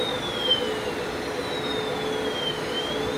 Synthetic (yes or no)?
no